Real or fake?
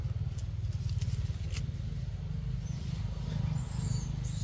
real